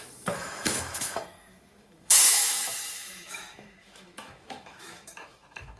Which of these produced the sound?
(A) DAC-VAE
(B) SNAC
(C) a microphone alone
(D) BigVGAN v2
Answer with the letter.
A